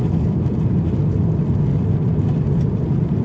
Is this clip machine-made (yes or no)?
no